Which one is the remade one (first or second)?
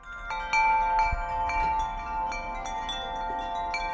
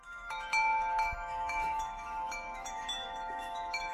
second